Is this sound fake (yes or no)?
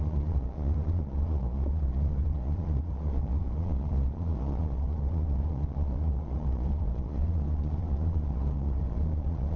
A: yes